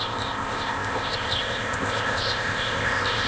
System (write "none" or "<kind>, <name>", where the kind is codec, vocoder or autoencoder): codec, ZipCodec